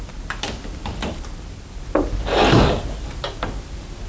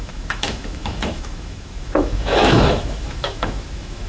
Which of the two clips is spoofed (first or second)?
second